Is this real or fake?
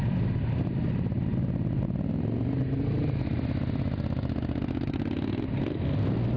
real